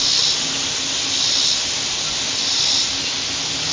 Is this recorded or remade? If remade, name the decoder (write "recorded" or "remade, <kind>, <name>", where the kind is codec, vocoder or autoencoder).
recorded